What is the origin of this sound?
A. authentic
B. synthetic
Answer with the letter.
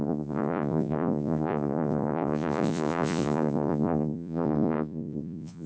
B